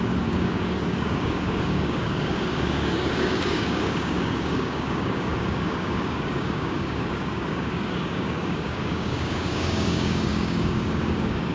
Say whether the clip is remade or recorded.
remade